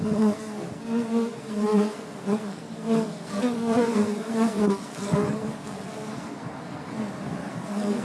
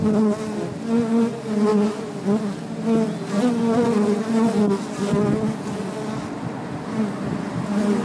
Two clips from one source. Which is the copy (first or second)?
first